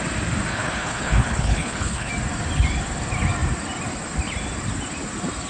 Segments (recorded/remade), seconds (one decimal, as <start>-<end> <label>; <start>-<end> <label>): 0.0-0.5 recorded; 0.5-2.1 remade; 2.1-5.5 recorded